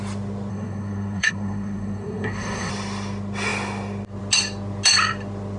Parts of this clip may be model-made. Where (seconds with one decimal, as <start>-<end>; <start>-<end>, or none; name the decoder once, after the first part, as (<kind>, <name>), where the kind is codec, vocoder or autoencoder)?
0.5-2.7 (codec, SNAC)